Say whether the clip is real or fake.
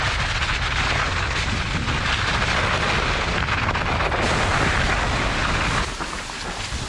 real